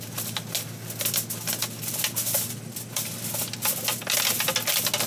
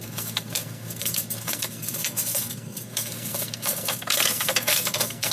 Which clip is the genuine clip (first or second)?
first